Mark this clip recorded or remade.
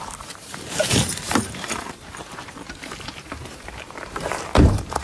remade